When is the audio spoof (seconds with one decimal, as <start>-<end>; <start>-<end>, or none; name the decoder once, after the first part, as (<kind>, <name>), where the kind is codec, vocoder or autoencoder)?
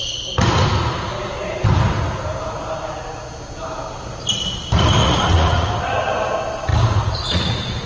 5.0-5.7 (vocoder, Vocos); 6.7-7.9